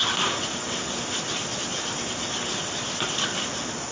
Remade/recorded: recorded